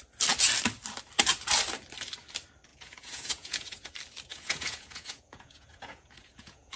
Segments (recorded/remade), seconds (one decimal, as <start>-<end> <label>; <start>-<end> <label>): 0.0-2.7 recorded; 2.7-3.9 remade; 3.9-4.3 recorded; 4.3-6.8 remade